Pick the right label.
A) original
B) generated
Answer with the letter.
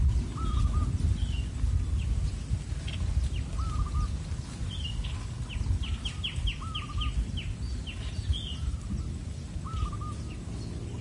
A